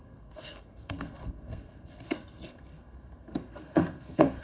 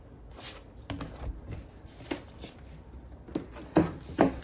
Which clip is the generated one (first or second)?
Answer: first